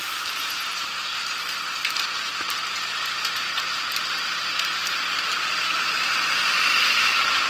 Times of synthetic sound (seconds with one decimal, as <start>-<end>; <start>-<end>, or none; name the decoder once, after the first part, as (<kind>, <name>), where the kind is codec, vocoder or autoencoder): 0.0-2.6 (vocoder, BigVGAN v2); 4.6-7.5